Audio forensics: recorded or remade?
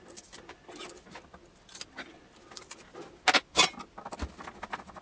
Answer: recorded